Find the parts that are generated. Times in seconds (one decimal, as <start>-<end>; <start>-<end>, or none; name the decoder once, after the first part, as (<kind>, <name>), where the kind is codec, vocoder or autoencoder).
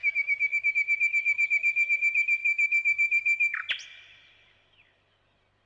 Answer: 0.0-0.7 (codec, DAC); 2.4-3.7